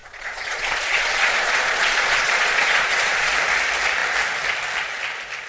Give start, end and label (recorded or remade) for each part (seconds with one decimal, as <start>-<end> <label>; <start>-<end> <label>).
0.0-3.3 remade; 3.3-5.5 recorded